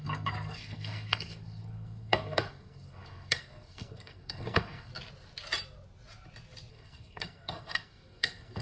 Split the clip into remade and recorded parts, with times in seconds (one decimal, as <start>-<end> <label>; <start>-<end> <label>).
0.0-4.9 remade; 4.9-6.7 recorded; 6.7-8.6 remade